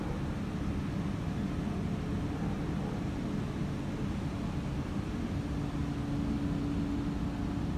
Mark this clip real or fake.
real